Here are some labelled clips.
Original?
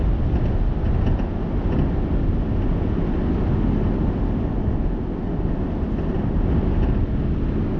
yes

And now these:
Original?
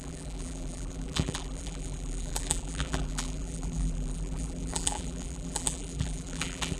no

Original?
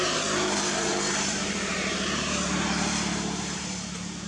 no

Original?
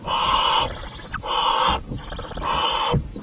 yes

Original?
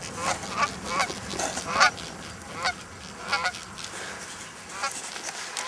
yes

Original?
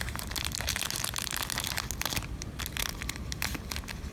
yes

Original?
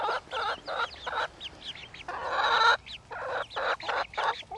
yes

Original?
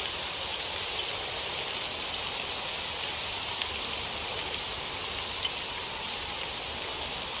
yes